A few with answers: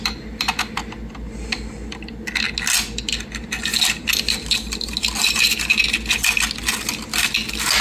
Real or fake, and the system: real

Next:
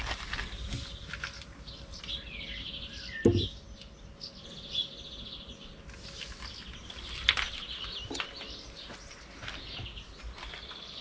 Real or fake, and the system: real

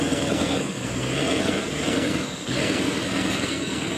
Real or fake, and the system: fake, codec, SNAC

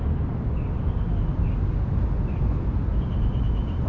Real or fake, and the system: real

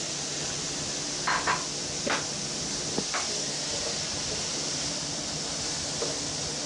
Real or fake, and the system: real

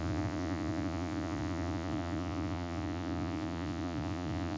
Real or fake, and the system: fake, vocoder, Vocos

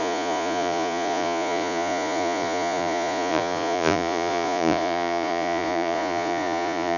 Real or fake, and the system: fake, vocoder, Vocos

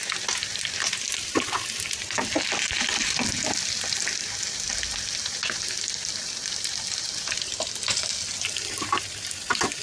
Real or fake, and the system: real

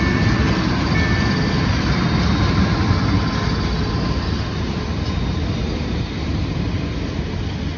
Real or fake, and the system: real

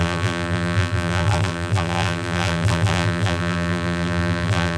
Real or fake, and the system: fake, vocoder, BigVGAN v2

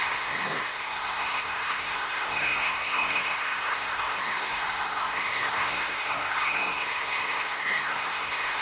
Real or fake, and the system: fake, codec, SNAC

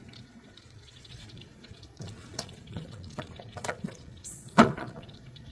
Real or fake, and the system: fake, vocoder, Vocos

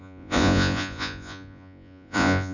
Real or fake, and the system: fake, vocoder, Vocos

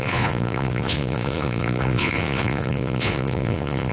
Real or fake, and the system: fake, vocoder, Vocos